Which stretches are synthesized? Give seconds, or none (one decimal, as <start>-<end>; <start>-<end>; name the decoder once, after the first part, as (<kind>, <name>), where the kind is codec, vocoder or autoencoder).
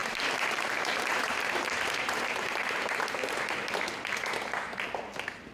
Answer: 0.0-3.0 (vocoder, BigVGAN v2)